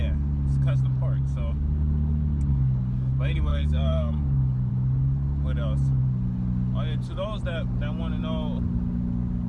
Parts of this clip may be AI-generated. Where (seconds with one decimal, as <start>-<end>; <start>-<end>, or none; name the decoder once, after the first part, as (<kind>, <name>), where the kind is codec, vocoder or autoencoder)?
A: 2.5-3.1 (codec, DAC); 3.5-4.7